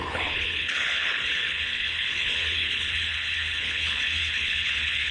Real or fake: fake